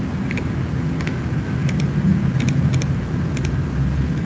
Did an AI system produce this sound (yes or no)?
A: no